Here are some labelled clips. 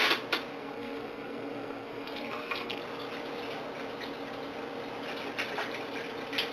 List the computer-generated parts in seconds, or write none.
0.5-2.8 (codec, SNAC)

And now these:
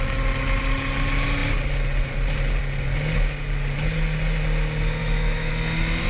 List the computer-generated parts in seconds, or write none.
5.0-5.5 (autoencoder, DAC-VAE)